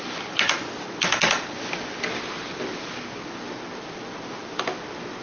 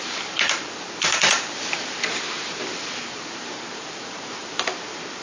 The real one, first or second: first